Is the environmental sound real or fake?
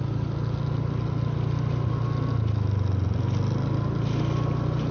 real